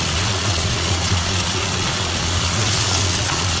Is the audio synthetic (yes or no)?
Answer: yes